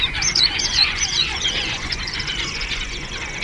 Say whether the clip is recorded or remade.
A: remade